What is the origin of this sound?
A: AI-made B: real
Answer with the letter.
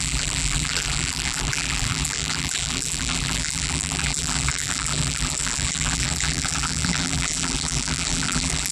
A